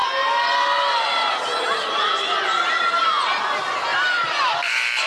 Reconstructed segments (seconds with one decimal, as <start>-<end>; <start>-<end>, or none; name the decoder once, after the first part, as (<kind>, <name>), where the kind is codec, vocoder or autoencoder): 3.9-4.5 (vocoder, BigVGAN v2)